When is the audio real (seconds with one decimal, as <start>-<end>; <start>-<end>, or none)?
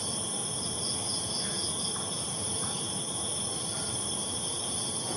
0.0-0.4; 3.5-4.2